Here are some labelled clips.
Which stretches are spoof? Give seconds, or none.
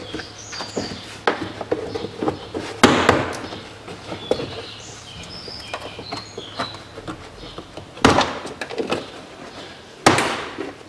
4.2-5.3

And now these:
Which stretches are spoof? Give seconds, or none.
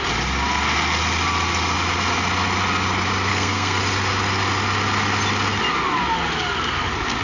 3.3-3.8